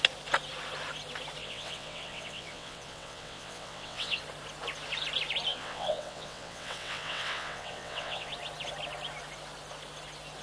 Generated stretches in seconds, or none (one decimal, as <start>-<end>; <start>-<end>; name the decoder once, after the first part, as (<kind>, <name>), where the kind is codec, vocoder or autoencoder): 1.4-4.2 (vocoder, WaveNeXt); 5.5-8.3